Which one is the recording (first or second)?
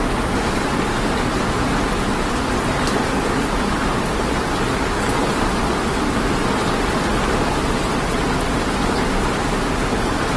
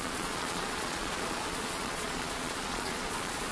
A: first